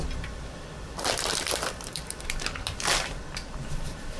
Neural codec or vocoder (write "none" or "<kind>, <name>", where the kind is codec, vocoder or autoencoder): vocoder, BigVGAN v2